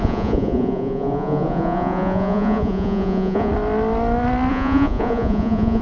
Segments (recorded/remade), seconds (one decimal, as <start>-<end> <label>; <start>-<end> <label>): 0.0-3.5 remade; 3.5-4.5 recorded; 4.5-5.8 remade